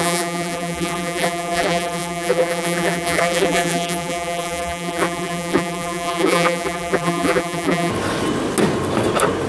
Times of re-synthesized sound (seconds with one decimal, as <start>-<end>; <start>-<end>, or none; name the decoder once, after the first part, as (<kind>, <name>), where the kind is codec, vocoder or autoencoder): 0.0-7.9 (vocoder, BigVGAN v2)